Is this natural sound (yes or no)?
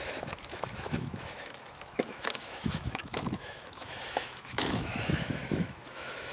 no